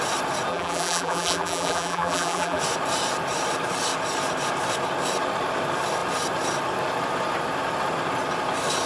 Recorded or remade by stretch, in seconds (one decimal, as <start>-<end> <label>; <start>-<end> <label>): 0.0-0.5 recorded; 0.5-2.6 remade; 2.6-8.9 recorded